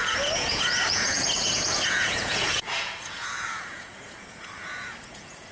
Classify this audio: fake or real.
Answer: fake